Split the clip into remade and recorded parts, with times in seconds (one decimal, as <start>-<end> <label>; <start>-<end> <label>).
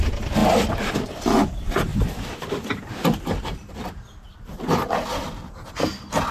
0.0-0.4 recorded; 0.4-0.9 remade; 0.9-1.9 recorded; 1.9-5.7 remade; 5.7-6.3 recorded